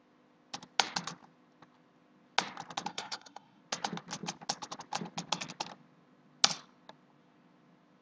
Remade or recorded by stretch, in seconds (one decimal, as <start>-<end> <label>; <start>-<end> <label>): 0.0-2.9 recorded; 2.9-3.6 remade; 3.6-8.0 recorded